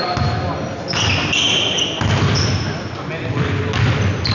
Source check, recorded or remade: recorded